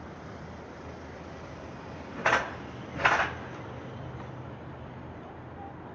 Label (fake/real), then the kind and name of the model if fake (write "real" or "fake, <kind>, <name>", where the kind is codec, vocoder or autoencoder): real